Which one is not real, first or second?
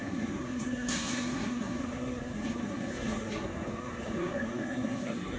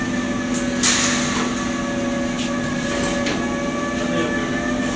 first